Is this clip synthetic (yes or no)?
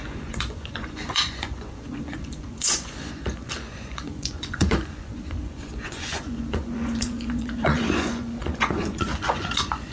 yes